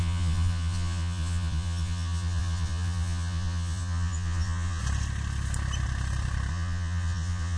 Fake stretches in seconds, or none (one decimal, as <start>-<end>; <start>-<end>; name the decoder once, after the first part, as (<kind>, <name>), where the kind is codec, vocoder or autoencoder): 0.0-4.8 (vocoder, Vocos); 6.5-7.6